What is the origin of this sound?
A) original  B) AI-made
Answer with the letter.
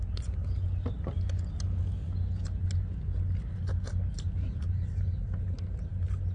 A